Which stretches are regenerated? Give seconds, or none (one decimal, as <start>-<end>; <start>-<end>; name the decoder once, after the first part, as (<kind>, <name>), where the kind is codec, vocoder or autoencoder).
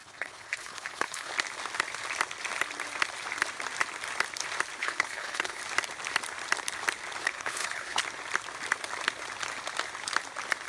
0.0-1.3 (codec, HILCodec); 4.8-5.6; 7.2-8.0